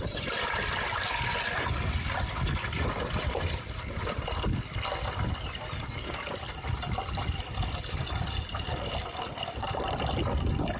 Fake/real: real